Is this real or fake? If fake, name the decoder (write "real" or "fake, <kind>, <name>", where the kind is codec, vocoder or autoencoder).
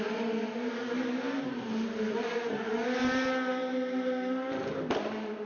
real